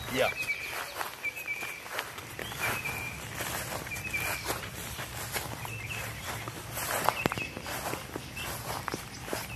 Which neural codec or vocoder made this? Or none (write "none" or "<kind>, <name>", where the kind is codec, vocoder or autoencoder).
none